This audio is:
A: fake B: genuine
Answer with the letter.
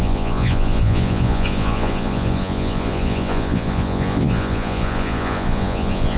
A